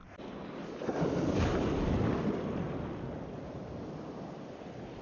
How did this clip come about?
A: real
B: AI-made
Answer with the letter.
A